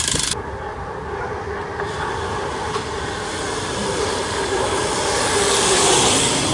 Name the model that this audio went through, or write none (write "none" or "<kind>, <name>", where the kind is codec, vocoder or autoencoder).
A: vocoder, BigVGAN v2